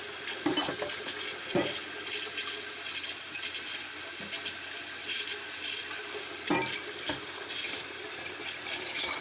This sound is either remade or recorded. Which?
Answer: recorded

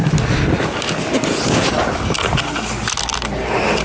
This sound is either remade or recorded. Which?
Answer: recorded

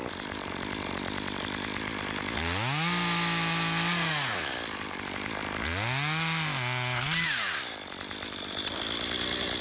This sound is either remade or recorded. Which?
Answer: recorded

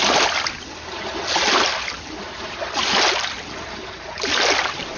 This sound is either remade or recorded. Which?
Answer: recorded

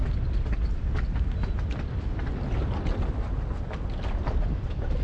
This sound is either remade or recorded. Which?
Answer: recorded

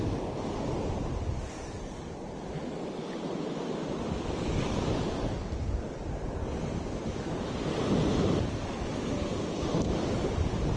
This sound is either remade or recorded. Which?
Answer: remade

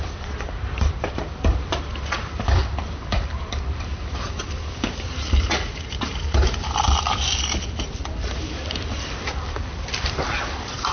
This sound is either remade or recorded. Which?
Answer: remade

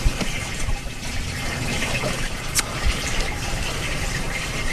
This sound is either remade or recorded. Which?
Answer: remade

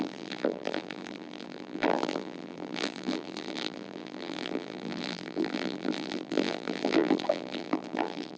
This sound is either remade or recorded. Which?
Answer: remade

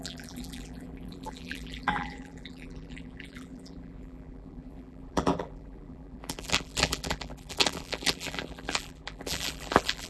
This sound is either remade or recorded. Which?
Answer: remade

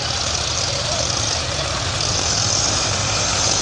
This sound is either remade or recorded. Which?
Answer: remade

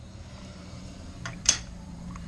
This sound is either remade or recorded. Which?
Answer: remade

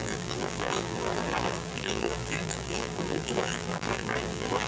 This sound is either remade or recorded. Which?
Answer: remade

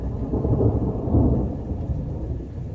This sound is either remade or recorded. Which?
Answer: recorded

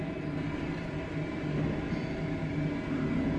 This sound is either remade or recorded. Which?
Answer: recorded